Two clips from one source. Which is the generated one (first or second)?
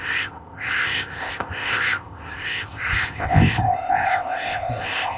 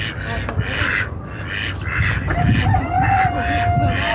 first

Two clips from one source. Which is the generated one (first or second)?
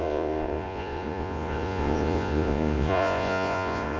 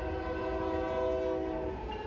first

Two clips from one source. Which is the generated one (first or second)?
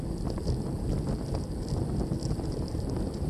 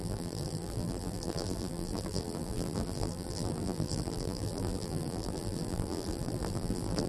second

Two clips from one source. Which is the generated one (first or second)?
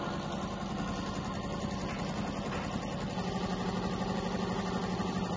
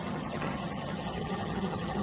second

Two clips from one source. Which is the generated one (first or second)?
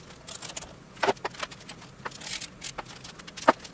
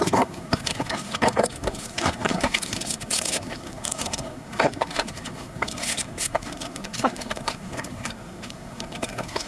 second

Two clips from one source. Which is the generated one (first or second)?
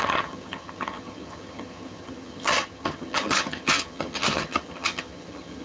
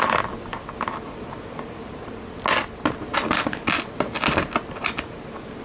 first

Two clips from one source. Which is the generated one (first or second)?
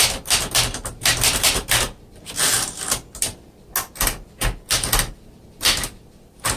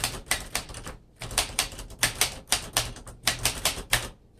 second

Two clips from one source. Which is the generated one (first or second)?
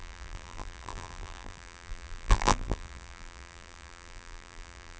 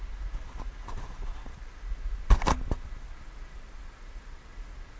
first